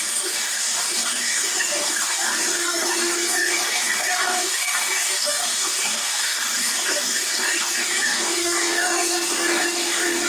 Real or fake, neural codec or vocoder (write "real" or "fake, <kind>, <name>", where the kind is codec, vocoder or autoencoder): fake, codec, DAC